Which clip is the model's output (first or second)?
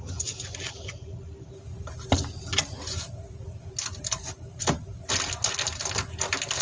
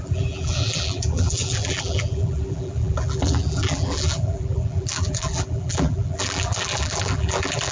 second